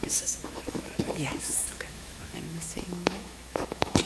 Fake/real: fake